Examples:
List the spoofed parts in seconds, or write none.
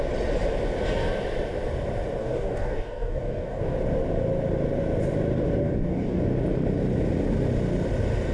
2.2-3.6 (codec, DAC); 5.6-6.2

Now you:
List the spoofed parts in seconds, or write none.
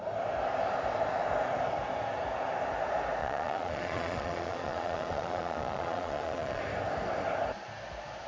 3.2-6.6 (vocoder, Vocos)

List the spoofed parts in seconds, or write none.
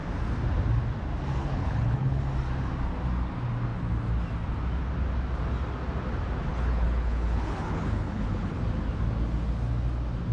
1.4-2.2 (codec, HILCodec); 6.5-8.6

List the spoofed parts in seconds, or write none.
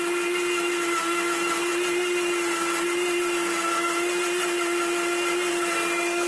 none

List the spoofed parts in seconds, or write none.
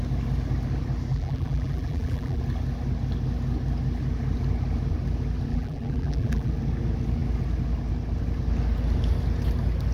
1.1-2.4 (vocoder, BigVGAN v2); 5.5-6.5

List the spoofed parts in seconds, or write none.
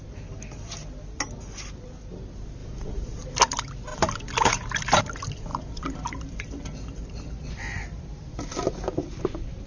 2.6-3.4 (vocoder, BigVGAN v2); 3.9-5.0; 5.5-8.0